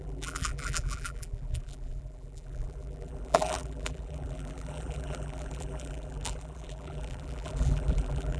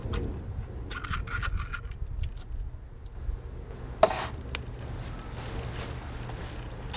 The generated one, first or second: first